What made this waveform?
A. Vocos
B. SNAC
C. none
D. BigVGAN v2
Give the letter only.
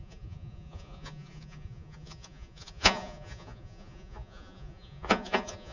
A